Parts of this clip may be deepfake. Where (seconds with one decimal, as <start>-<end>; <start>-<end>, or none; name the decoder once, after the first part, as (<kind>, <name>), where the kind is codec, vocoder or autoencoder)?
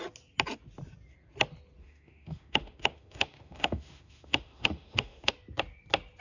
1.8-5.3 (autoencoder, DAC-VAE)